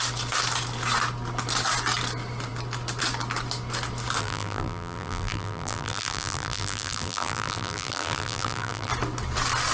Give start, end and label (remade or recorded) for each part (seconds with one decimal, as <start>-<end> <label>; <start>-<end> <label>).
0.0-4.2 recorded; 4.2-8.9 remade; 8.9-9.7 recorded